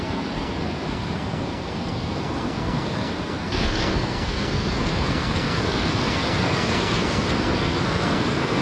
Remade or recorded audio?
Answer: remade